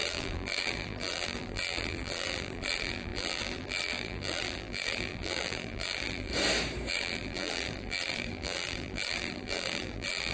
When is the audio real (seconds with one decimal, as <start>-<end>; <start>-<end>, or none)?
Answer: 6.3-6.9